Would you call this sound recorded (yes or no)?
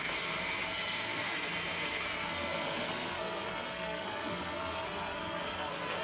no